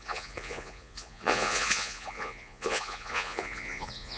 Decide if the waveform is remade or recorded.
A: remade